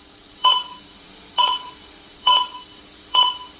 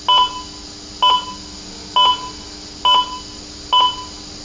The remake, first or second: first